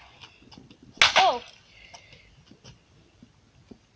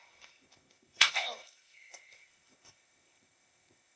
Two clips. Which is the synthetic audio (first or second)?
second